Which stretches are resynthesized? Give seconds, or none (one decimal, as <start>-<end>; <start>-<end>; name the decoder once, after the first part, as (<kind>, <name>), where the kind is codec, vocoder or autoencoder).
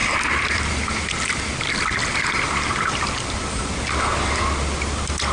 0.0-0.7 (vocoder, BigVGAN v2); 2.0-3.7